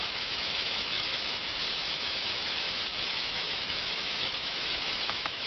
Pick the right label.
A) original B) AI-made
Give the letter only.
B